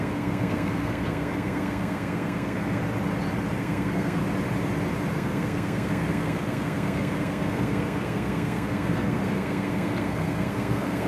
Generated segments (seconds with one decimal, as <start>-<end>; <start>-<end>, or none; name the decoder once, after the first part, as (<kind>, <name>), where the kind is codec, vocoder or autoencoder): 0.0-2.8 (codec, SNAC); 3.6-4.2; 5.1-11.1